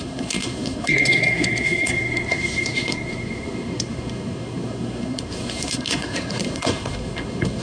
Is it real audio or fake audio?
fake